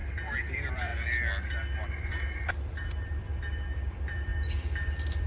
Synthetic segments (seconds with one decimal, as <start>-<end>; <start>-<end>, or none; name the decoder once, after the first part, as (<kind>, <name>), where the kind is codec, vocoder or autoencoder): 0.5-0.9 (vocoder, BigVGAN v2); 2.0-4.3